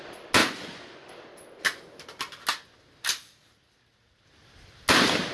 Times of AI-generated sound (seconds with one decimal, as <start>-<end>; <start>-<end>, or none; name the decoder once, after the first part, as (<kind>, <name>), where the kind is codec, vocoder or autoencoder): 0.4-1.1 (vocoder, Vocos)